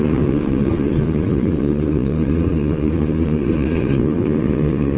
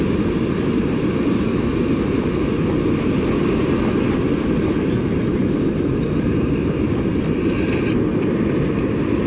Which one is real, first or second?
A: second